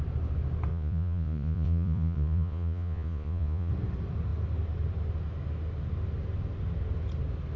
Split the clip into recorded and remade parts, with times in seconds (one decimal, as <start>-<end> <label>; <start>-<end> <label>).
0.0-0.7 recorded; 0.7-3.7 remade; 3.7-7.6 recorded